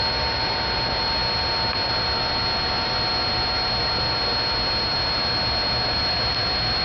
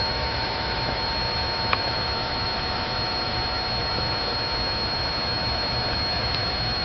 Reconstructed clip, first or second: second